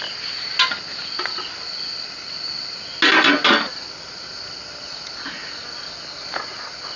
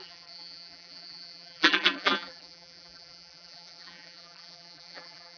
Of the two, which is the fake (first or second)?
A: second